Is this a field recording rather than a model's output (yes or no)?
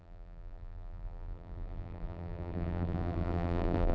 no